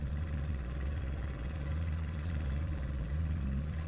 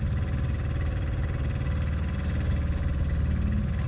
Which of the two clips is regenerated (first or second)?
first